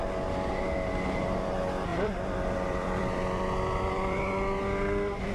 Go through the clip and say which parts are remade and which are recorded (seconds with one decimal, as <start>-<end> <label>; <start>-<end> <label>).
0.0-1.9 recorded; 1.9-4.2 remade; 4.2-5.3 recorded